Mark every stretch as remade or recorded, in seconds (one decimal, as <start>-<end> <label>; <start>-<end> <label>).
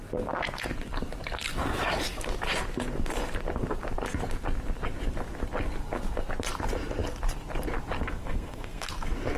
0.0-8.2 recorded; 8.2-8.9 remade; 8.9-9.4 recorded